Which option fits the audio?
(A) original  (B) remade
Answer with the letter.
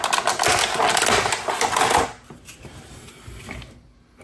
A